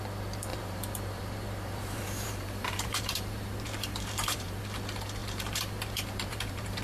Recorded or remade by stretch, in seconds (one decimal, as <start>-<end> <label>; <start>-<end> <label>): 0.0-0.5 recorded; 0.5-4.6 remade; 4.6-5.2 recorded; 5.2-6.8 remade